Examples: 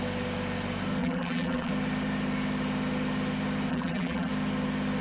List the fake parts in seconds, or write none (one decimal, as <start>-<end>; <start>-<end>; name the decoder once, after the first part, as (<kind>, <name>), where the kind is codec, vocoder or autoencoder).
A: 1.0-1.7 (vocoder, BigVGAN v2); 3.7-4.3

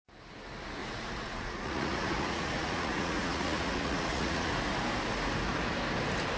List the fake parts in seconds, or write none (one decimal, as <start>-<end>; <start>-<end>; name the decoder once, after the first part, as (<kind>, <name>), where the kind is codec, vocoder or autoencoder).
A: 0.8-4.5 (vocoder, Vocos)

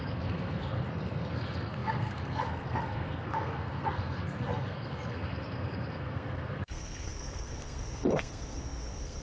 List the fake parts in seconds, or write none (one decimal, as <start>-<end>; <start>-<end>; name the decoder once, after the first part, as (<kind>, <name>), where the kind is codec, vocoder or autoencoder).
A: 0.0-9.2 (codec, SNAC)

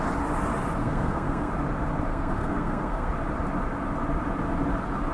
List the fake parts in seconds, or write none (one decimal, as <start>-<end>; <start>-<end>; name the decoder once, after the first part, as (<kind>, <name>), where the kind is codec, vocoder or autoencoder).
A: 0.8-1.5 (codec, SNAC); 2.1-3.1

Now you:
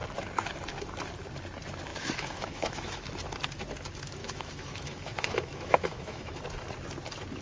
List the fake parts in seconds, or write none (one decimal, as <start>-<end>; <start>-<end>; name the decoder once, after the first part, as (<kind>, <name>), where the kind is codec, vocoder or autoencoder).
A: 1.9-3.1 (autoencoder, DAC-VAE); 4.2-6.4